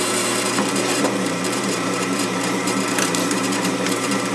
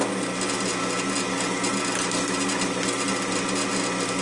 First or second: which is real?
second